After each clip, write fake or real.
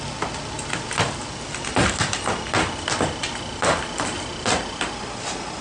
real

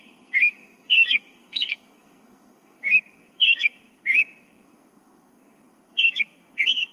fake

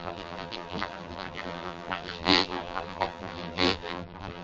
fake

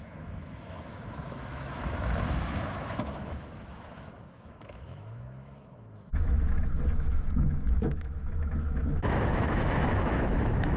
fake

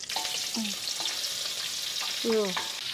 real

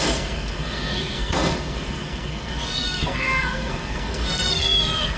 fake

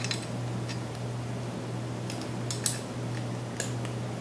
real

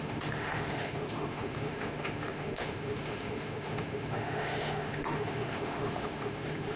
fake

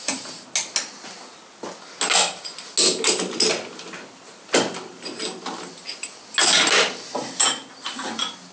real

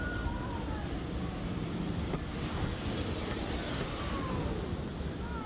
real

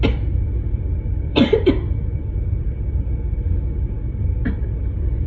fake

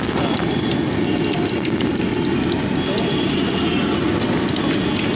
real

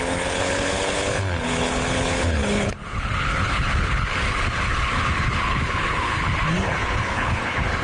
fake